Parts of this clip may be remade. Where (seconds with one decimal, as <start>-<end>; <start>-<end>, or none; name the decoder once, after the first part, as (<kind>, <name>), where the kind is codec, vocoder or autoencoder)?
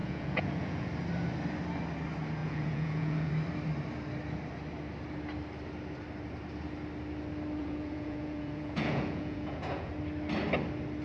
0.0-0.9 (vocoder, Vocos); 2.4-3.3; 7.6-9.9